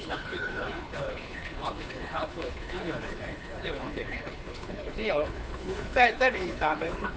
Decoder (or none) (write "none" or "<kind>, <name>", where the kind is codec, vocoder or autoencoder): codec, HILCodec